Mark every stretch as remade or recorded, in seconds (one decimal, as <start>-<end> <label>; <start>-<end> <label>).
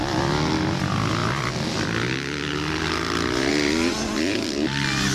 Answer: 0.0-5.1 recorded